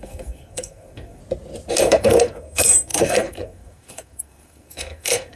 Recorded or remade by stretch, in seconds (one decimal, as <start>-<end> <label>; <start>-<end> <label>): 0.0-1.2 remade; 1.2-1.8 recorded; 1.8-5.4 remade